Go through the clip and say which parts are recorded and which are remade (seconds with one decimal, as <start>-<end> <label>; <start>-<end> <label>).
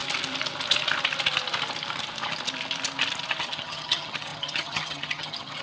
0.0-3.4 recorded; 3.4-5.6 remade